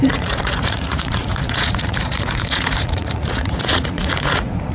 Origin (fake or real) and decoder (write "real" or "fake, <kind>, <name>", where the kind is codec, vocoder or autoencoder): fake, vocoder, Vocos